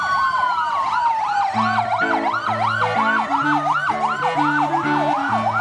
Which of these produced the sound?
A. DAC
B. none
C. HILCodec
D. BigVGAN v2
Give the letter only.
B